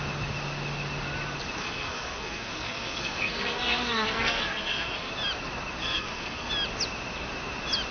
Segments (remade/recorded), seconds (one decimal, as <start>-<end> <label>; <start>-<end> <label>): 0.0-1.6 recorded; 1.6-5.1 remade; 5.1-5.8 recorded; 5.8-6.5 remade; 6.5-7.9 recorded